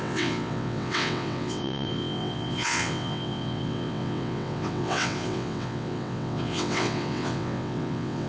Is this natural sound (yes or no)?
no